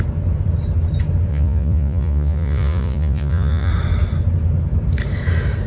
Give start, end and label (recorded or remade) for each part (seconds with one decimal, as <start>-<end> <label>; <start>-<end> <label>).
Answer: 0.0-1.3 recorded; 1.3-3.7 remade; 3.7-5.7 recorded